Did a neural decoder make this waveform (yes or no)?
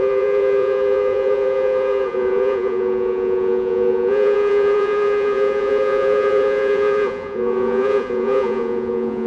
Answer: yes